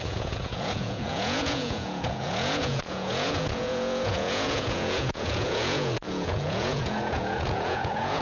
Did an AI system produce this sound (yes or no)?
yes